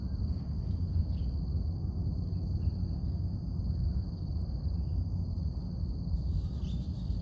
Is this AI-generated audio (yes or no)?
no